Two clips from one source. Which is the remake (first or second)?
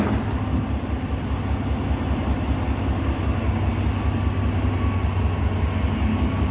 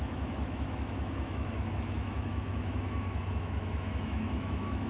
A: second